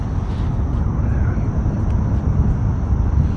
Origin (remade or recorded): recorded